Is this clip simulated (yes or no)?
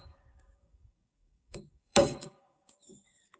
yes